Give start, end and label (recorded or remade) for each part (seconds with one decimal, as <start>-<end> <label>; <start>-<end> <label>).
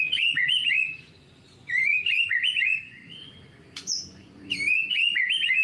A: 0.0-5.6 remade